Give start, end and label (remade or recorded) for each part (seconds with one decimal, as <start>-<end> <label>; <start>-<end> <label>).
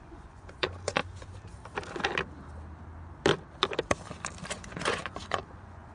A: 0.0-1.0 remade; 1.0-4.5 recorded; 4.5-5.9 remade